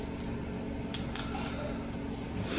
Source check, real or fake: real